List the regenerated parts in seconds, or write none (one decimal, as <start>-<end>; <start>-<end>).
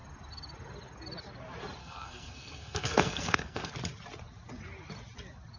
1.8-3.7